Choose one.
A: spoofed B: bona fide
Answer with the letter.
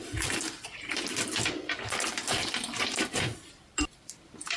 A